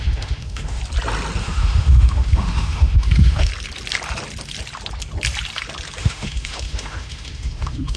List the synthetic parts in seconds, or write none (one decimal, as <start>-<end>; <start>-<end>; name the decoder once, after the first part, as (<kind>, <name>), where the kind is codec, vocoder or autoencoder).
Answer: 0.0-0.8 (autoencoder, DAC-VAE); 1.4-3.5; 6.0-8.0